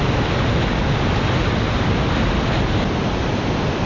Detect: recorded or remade recorded